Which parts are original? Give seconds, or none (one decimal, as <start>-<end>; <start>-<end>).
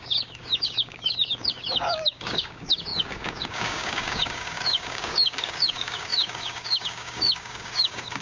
none